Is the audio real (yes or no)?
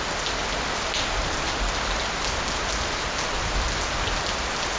yes